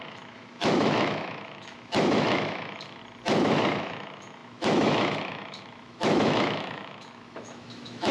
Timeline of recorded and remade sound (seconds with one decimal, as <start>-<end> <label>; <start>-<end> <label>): 0.0-3.0 remade; 3.0-3.8 recorded; 3.8-8.1 remade